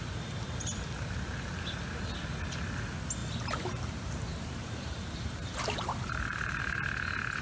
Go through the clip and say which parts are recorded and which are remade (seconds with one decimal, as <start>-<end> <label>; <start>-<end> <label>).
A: 0.0-3.2 recorded; 3.2-6.6 remade; 6.6-7.4 recorded